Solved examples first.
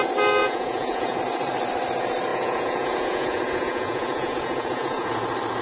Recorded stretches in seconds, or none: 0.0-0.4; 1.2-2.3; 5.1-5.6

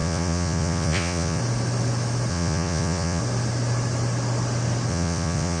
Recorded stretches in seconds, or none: 1.4-2.3; 3.2-4.9

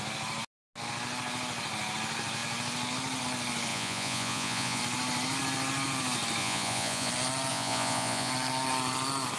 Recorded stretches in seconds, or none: 0.0-3.7; 4.8-6.4; 7.1-7.5; 8.3-9.4

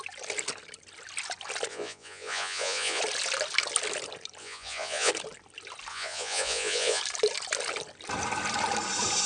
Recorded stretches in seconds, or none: 0.0-1.7; 3.0-4.4; 5.1-5.9; 7.0-9.3

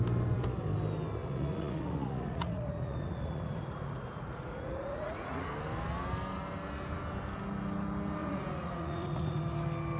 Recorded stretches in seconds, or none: 0.0-1.2; 5.5-8.2; 9.4-10.0